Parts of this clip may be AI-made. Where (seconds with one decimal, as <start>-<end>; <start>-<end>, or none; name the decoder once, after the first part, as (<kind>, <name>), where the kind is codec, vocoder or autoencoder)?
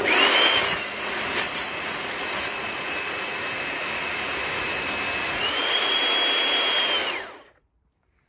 0.0-4.8 (vocoder, Vocos); 5.2-6.0; 7.0-7.7